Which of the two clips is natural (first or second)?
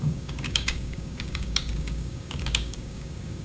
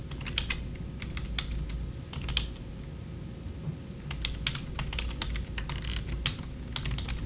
second